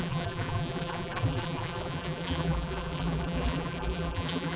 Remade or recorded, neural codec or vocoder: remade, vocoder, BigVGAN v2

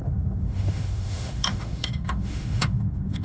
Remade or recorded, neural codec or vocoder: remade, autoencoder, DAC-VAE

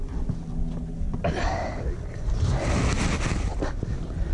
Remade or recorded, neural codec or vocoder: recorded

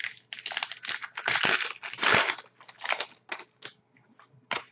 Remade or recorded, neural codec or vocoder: recorded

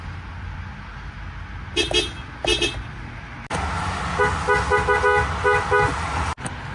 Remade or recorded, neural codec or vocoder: recorded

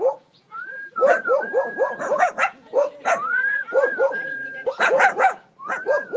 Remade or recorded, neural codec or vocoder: remade, vocoder, Vocos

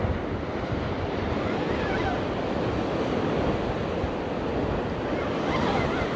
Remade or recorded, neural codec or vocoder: recorded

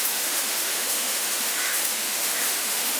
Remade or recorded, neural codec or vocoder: remade, autoencoder, DAC-VAE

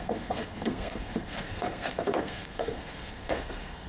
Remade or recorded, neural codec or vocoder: remade, codec, SNAC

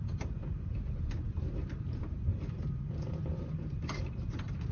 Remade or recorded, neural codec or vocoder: remade, vocoder, BigVGAN v2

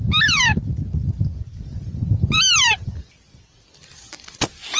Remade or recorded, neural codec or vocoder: recorded